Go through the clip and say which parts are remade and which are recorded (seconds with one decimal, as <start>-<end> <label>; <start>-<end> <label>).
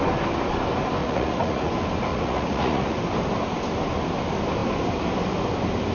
0.0-1.0 recorded; 1.0-1.7 remade; 1.7-2.1 recorded; 2.1-3.0 remade; 3.0-5.9 recorded